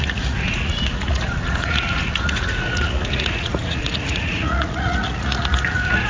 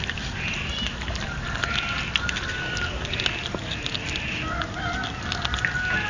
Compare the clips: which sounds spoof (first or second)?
first